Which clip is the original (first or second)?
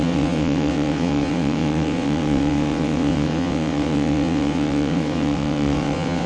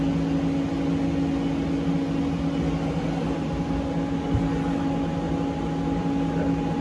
second